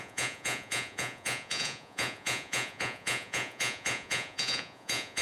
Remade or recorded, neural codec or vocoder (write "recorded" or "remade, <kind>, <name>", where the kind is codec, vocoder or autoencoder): remade, vocoder, Vocos